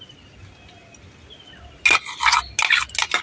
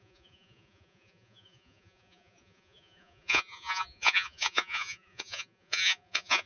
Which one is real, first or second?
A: first